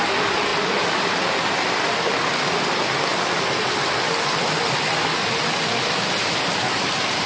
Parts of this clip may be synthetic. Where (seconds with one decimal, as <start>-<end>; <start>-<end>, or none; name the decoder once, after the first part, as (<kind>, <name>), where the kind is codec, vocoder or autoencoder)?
none